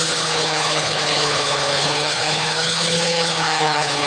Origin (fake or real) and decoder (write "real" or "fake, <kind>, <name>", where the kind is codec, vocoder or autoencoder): fake, codec, HILCodec